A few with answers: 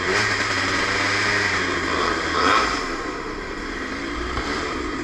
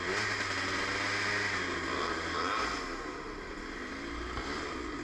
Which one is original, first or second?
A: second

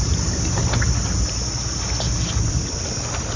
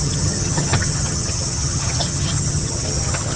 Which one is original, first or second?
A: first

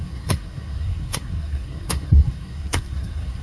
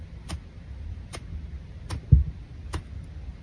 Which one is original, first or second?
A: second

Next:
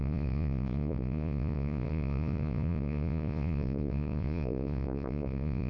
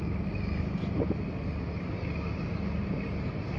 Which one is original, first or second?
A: second